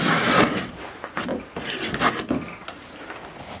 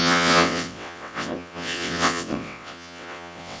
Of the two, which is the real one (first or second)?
first